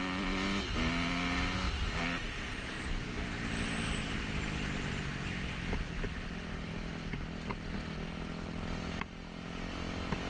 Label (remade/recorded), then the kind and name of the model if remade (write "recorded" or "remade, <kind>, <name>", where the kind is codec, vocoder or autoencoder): recorded